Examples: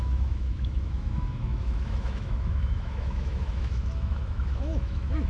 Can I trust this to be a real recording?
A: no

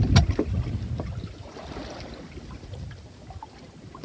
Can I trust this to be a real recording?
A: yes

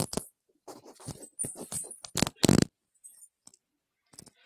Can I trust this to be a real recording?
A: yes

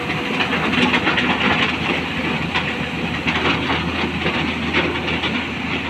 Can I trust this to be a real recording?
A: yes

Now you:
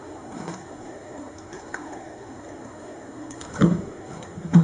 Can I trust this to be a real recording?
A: no